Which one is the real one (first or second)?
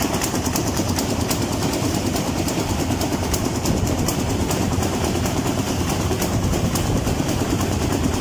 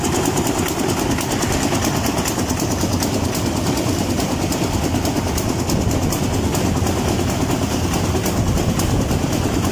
second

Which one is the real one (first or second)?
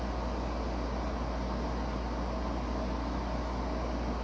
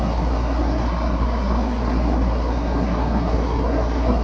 first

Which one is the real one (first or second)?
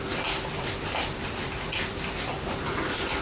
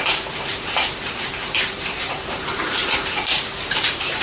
first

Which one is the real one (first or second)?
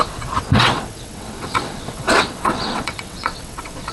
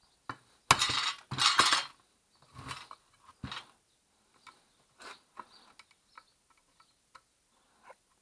second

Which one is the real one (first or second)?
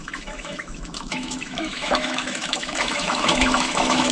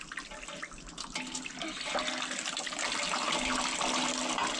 second